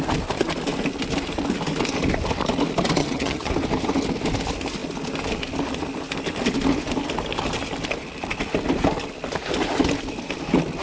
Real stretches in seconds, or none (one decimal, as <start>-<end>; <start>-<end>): 0.0-3.0; 3.5-10.8

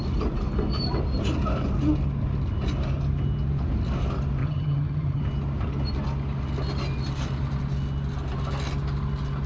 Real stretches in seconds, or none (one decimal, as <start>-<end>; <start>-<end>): 0.0-4.4; 5.2-9.5

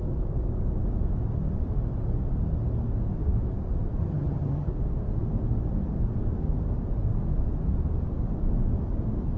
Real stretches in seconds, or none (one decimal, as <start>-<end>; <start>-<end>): 0.0-4.0; 4.7-9.4

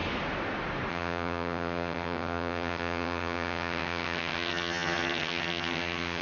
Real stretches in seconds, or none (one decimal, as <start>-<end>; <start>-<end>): 0.0-0.9